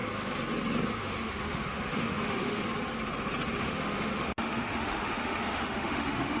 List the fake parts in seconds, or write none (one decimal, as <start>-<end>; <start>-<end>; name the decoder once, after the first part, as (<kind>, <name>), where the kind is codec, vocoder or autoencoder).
1.0-2.6 (autoencoder, DAC-VAE); 3.6-6.4